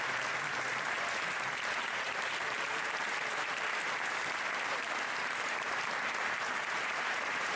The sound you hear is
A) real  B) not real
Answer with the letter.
B